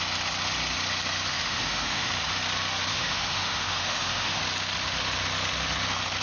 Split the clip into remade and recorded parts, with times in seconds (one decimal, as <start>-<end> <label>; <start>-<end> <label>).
0.0-1.3 recorded; 1.3-2.1 remade; 2.1-2.9 recorded; 2.9-4.4 remade; 4.4-6.2 recorded